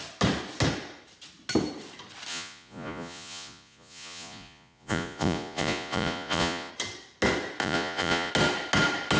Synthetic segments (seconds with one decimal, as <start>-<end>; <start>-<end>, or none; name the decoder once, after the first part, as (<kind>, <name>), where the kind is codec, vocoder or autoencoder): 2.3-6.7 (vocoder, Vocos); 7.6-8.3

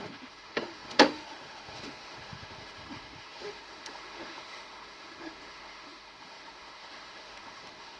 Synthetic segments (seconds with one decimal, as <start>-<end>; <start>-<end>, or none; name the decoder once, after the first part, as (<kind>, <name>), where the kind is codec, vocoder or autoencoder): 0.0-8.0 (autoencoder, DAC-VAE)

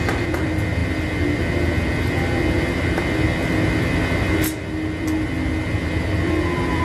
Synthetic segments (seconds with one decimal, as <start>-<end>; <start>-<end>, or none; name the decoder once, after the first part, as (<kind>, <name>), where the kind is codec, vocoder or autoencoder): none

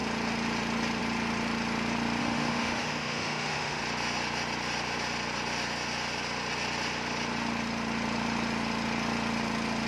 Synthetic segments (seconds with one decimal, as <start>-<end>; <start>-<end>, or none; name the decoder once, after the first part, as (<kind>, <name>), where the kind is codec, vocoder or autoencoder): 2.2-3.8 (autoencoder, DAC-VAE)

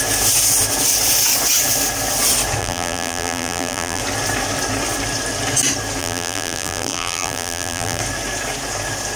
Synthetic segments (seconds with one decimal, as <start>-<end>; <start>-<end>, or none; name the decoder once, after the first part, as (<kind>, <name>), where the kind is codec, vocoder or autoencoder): 2.6-4.0 (vocoder, BigVGAN v2); 6.0-8.0

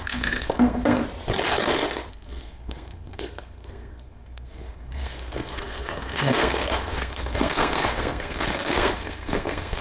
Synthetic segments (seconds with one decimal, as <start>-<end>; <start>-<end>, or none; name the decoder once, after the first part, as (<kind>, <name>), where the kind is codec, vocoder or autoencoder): 0.0-1.0 (codec, SNAC); 2.1-9.8

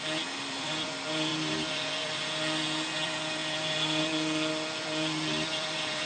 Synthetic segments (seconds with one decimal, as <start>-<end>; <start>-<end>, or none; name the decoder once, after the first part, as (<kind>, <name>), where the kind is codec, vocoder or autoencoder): 0.0-6.1 (vocoder, BigVGAN v2)

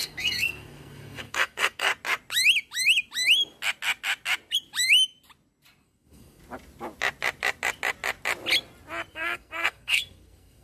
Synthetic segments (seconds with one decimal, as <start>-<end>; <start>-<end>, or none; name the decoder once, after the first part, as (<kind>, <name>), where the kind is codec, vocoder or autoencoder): 0.0-1.9 (codec, SNAC); 5.8-6.4; 9.1-10.6